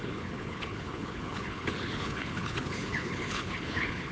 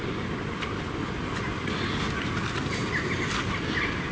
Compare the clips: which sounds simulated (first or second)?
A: first